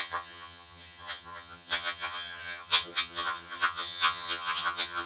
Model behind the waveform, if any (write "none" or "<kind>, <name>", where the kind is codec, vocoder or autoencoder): vocoder, HiFi-GAN